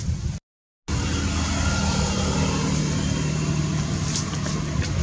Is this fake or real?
real